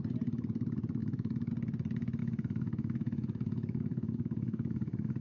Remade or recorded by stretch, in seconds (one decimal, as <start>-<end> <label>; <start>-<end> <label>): 0.0-1.0 recorded; 1.0-1.5 remade; 1.5-2.2 recorded; 2.2-5.2 remade